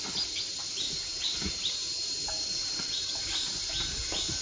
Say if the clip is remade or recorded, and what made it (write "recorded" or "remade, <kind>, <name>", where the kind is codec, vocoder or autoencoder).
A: recorded